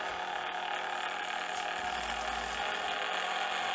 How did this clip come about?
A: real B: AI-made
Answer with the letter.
A